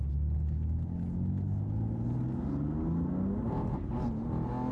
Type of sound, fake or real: real